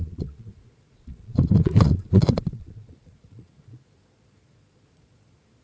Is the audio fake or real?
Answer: fake